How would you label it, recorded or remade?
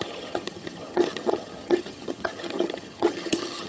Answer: remade